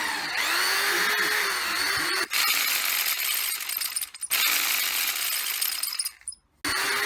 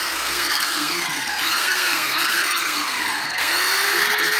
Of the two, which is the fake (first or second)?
second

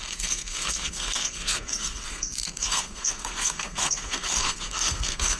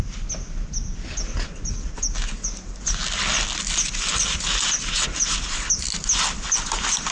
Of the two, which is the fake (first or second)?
first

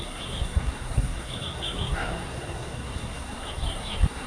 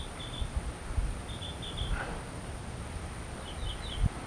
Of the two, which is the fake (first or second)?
first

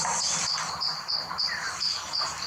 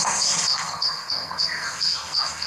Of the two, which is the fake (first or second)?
second